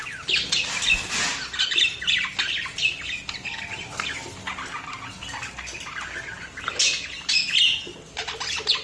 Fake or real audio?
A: real